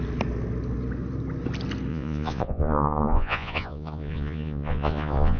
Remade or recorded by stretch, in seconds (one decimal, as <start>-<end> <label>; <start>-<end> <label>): 0.0-1.9 recorded; 1.9-5.4 remade